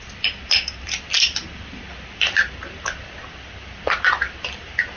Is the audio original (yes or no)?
yes